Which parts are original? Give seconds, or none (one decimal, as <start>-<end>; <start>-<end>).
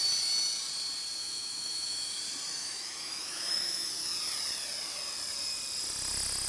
0.0-1.2; 2.2-2.6; 3.9-6.5